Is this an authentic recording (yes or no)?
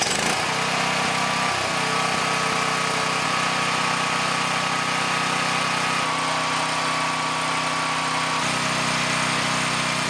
yes